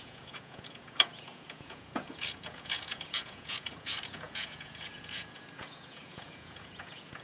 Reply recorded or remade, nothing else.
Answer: remade